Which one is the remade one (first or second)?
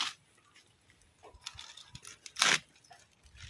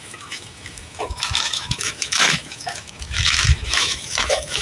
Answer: second